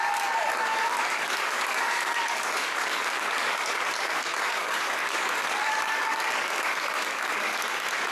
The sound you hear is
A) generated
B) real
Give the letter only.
A